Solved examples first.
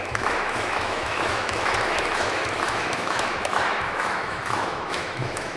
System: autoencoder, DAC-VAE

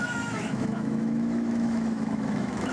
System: autoencoder, DAC-VAE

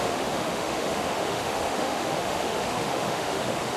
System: autoencoder, DAC-VAE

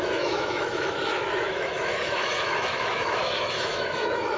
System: autoencoder, DAC-VAE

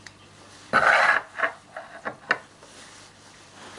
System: none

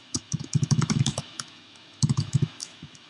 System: autoencoder, DAC-VAE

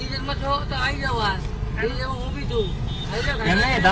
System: none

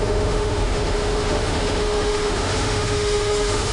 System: autoencoder, DAC-VAE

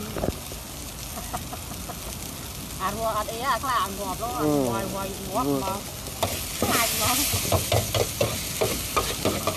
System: none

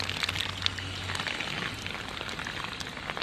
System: none